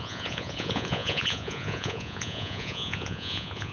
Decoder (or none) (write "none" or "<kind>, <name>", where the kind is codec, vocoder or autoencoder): vocoder, Vocos